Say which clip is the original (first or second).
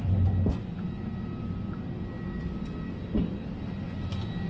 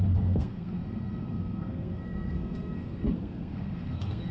first